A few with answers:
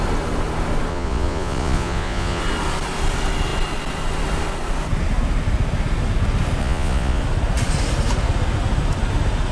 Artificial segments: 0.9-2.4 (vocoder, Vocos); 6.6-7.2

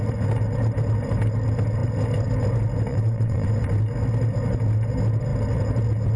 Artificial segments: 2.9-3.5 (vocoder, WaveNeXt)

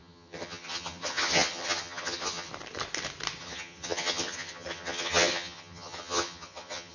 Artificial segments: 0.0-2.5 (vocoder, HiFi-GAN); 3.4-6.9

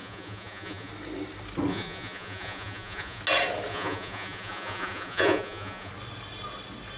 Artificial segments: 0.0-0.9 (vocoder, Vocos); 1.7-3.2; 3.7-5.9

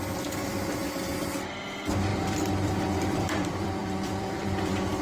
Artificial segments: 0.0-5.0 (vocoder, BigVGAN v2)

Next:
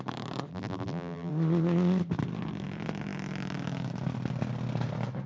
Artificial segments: 0.5-1.3 (vocoder, BigVGAN v2)

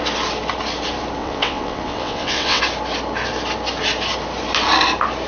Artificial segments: 1.2-2.6 (vocoder, WaveNeXt)

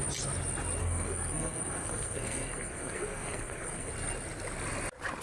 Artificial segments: 0.8-3.9 (codec, SNAC)